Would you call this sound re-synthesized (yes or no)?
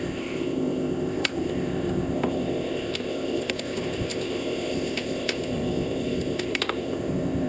yes